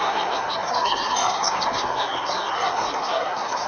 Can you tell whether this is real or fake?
fake